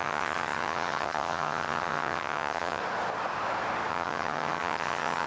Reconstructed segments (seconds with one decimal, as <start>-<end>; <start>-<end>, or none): 0.0-2.8; 3.9-5.3